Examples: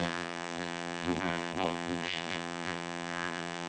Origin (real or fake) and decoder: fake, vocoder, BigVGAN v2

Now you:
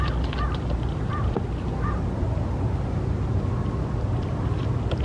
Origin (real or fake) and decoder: real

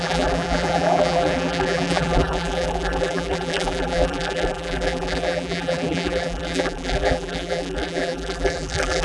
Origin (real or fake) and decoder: fake, vocoder, BigVGAN v2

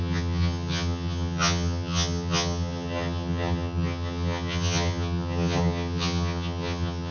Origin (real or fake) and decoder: fake, vocoder, HiFi-GAN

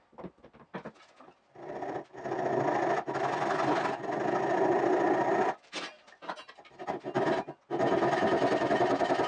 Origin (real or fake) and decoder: real